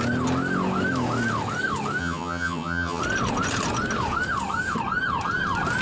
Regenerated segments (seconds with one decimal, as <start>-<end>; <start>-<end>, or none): 2.0-3.0